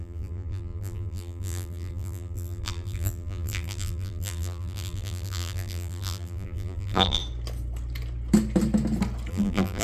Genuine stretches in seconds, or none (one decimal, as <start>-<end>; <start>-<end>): 7.2-9.3